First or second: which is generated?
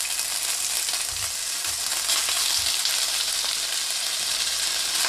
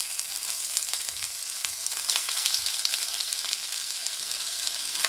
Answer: second